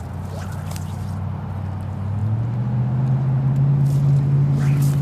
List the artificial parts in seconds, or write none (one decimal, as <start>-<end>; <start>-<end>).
none